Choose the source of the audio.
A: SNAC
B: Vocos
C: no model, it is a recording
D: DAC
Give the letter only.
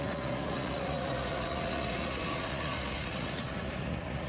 B